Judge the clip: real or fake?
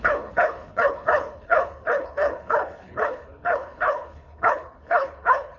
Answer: fake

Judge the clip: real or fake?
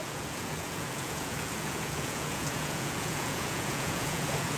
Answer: fake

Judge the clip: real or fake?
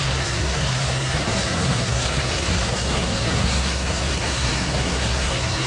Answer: fake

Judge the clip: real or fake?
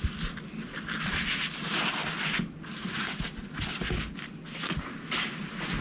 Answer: real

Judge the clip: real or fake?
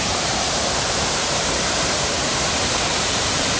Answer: fake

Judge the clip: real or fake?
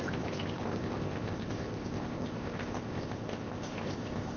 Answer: fake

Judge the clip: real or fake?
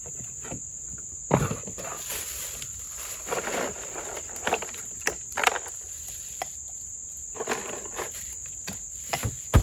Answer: real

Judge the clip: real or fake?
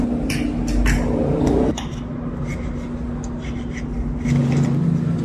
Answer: real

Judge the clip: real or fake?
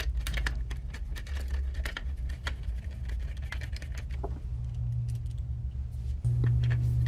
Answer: real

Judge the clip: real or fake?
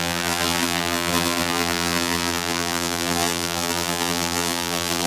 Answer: fake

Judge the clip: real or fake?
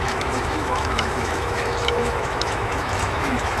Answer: fake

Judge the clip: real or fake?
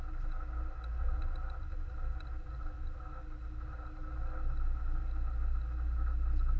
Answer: real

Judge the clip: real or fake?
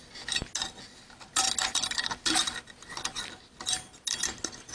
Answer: real